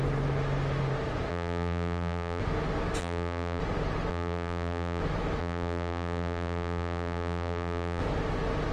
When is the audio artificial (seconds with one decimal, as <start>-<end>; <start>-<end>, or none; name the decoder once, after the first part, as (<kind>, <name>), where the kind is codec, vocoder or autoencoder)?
1.3-2.4 (vocoder, BigVGAN v2); 3.0-3.6; 4.1-5.0; 5.4-8.0